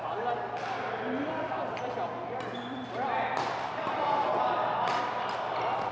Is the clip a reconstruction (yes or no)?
no